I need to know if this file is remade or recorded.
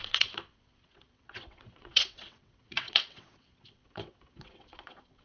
remade